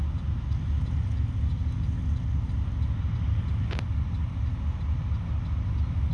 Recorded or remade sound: recorded